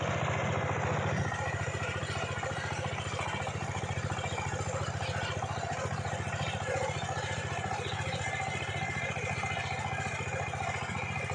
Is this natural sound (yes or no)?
yes